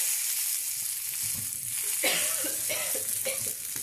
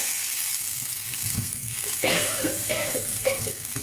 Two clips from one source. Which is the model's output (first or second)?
second